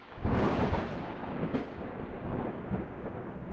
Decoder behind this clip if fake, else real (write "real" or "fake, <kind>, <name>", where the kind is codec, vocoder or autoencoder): fake, codec, DAC